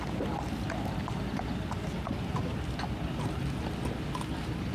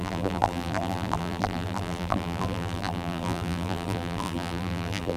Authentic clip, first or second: first